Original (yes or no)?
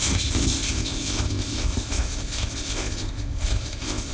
no